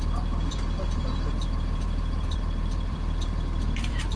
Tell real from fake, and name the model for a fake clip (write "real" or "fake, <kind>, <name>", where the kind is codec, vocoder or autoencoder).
fake, vocoder, BigVGAN v2